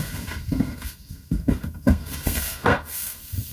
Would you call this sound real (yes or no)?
no